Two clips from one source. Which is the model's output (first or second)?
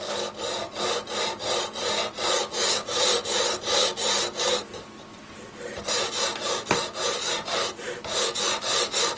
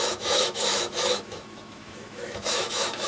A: second